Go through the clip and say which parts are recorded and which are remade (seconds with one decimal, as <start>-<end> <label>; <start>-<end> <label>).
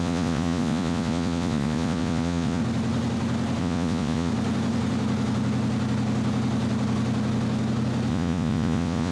0.0-2.6 remade; 2.6-3.6 recorded; 3.6-4.3 remade; 4.3-8.1 recorded; 8.1-9.1 remade